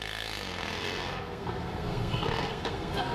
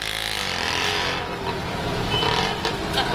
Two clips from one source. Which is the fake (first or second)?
first